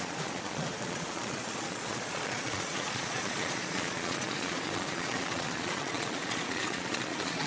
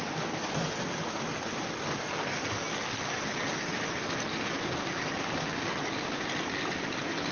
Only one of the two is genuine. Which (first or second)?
second